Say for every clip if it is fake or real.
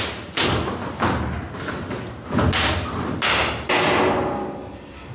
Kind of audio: real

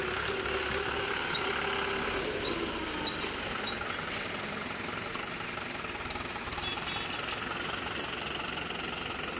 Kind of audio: real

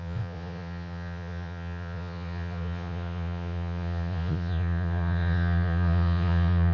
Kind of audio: fake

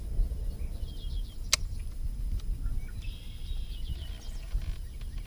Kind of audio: real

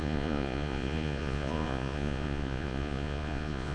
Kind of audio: fake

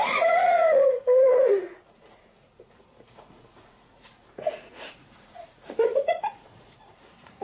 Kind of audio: fake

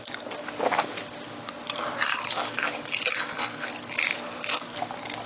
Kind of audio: real